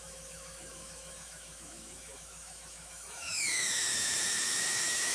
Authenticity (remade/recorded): remade